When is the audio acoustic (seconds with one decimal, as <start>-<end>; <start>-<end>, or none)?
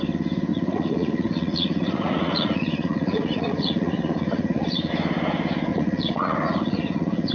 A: 0.0-0.5; 4.9-5.7